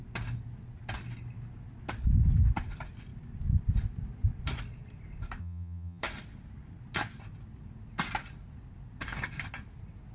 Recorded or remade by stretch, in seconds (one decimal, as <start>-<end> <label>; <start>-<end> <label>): 0.0-5.4 recorded; 5.4-6.0 remade; 6.0-10.1 recorded